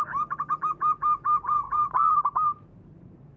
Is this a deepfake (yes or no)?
yes